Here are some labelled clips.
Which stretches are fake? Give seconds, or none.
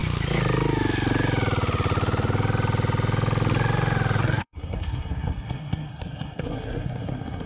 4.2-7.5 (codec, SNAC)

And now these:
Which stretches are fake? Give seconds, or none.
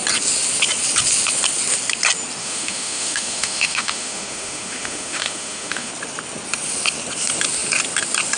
2.4-5.9 (autoencoder, DAC-VAE)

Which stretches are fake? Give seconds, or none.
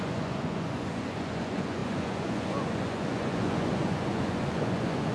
0.0-5.1 (vocoder, Vocos)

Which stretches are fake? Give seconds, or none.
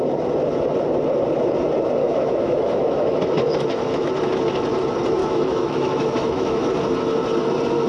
2.0-4.1 (autoencoder, DAC-VAE); 5.2-6.6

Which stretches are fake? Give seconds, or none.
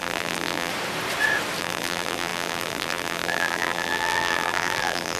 0.0-0.7 (vocoder, BigVGAN v2); 1.6-5.2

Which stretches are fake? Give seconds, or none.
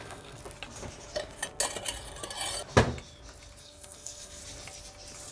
0.0-0.4 (codec, SNAC); 3.6-4.4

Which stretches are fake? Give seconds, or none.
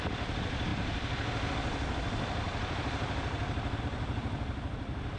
0.0-5.2 (vocoder, BigVGAN v2)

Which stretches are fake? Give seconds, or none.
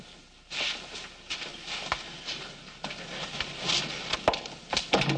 none